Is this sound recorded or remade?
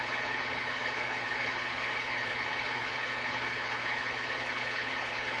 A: remade